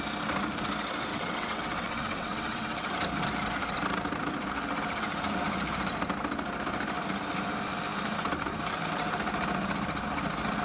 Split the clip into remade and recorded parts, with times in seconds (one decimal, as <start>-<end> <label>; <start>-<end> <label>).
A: 0.0-1.1 recorded; 1.1-2.9 remade; 2.9-10.6 recorded